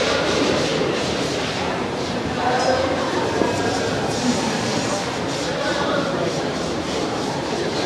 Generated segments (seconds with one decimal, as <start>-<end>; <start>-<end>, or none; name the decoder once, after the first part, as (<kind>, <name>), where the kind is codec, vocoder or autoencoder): 0.0-4.7 (vocoder, BigVGAN v2); 5.6-7.9